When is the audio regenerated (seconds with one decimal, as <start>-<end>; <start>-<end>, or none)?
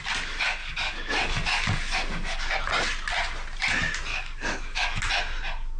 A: 0.6-2.5; 4.1-5.0